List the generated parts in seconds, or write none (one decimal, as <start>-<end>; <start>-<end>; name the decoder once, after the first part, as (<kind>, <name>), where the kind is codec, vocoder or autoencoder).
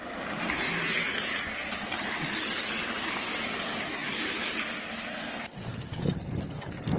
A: none